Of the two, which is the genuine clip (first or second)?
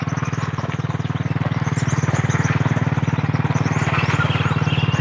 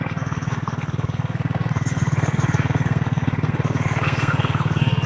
first